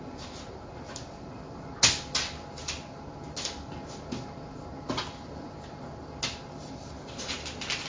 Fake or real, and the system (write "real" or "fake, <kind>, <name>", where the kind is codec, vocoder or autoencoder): real